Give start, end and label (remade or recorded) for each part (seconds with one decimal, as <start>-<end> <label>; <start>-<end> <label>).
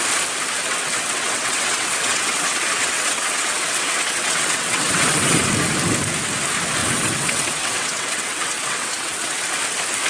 0.0-0.6 recorded; 0.6-5.4 remade; 5.4-6.8 recorded; 6.8-9.4 remade; 9.4-10.1 recorded